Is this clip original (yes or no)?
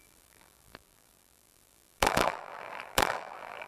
no